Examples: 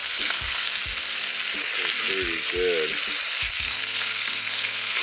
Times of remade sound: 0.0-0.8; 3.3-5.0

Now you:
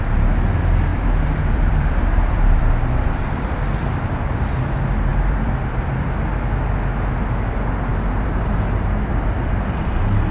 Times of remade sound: 0.9-3.9; 5.1-5.9; 7.9-9.5

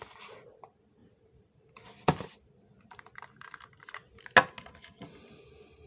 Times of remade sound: 1.0-3.2

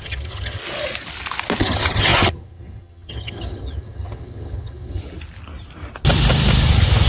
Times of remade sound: 0.0-0.6; 1.6-5.0

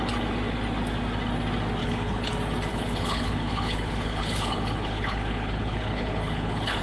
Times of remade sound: 1.8-2.3; 2.7-6.8